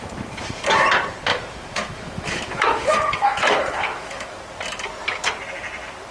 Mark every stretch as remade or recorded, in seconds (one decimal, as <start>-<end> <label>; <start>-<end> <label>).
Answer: 0.0-1.3 recorded; 1.3-4.4 remade; 4.4-6.1 recorded